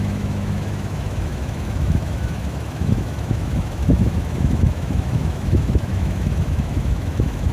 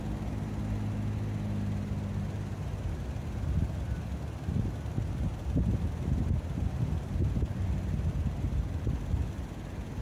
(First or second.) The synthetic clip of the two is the first